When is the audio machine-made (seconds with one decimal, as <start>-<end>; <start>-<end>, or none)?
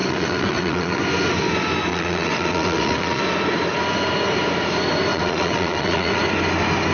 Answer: 0.0-1.0; 1.9-3.2; 5.1-6.2